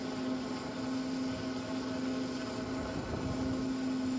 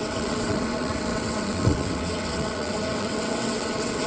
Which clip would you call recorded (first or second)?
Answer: first